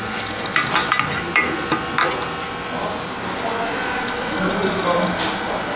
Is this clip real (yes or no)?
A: yes